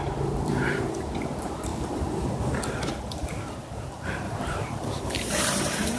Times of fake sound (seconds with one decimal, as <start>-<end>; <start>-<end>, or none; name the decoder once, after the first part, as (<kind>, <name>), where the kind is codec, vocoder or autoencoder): 0.0-1.7 (vocoder, BigVGAN v2); 4.4-6.0